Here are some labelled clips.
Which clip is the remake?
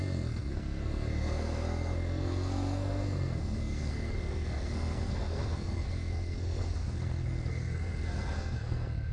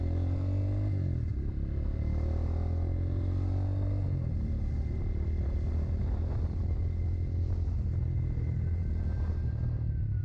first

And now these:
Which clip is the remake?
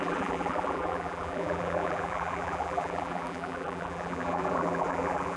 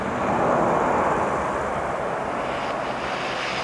first